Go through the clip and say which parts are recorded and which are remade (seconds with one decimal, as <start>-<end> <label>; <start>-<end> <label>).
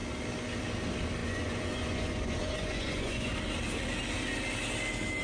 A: 0.0-1.2 recorded; 1.2-3.3 remade; 3.3-5.2 recorded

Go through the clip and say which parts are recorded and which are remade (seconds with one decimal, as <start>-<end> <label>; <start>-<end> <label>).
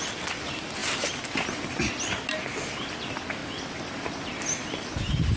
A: 0.0-5.4 recorded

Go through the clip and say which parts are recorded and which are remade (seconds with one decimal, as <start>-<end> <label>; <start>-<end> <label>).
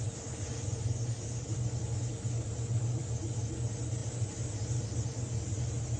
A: 0.0-6.0 recorded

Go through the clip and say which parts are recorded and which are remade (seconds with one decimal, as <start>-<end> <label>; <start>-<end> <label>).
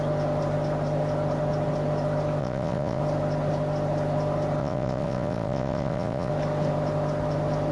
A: 0.0-2.4 recorded; 2.4-3.0 remade; 3.0-4.6 recorded; 4.6-6.3 remade; 6.3-7.7 recorded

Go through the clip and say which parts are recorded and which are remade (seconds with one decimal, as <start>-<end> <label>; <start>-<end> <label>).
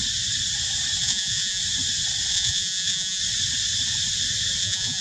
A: 0.0-1.0 recorded; 1.0-1.6 remade; 1.6-2.3 recorded; 2.3-3.2 remade; 3.2-4.6 recorded; 4.6-5.0 remade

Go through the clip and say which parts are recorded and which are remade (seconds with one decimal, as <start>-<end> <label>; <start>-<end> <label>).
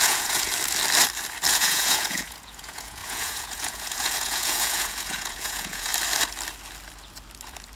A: 0.0-0.5 remade; 0.5-1.5 recorded; 1.5-5.9 remade; 5.9-7.8 recorded